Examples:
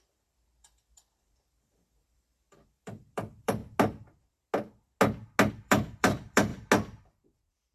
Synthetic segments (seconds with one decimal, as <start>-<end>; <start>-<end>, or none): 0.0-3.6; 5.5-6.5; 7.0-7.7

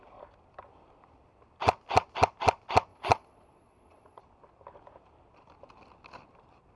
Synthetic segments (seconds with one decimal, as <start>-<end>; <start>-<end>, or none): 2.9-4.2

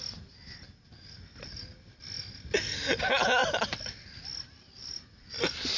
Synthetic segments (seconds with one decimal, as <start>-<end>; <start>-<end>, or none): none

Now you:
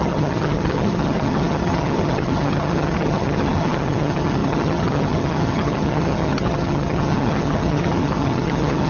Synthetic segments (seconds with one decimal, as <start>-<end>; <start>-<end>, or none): 0.0-8.9

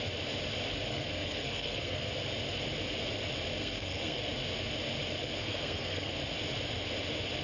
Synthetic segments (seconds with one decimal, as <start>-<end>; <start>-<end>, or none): 0.9-2.1; 3.6-4.3; 5.4-6.1